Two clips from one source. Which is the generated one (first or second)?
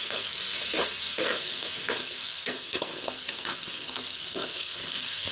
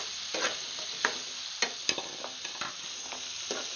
first